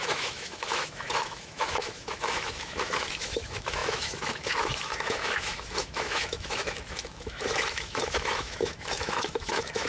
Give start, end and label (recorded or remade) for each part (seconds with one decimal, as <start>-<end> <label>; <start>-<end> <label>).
0.0-9.9 remade